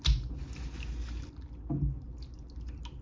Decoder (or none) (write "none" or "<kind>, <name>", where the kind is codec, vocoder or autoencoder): none